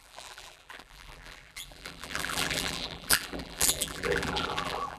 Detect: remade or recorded remade